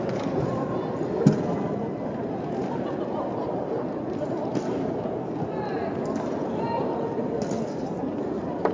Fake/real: real